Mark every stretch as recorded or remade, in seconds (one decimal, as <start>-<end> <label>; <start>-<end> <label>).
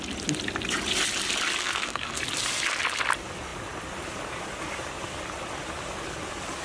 0.0-1.6 recorded; 1.6-2.2 remade; 2.2-6.6 recorded